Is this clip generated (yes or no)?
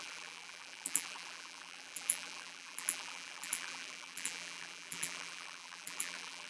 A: yes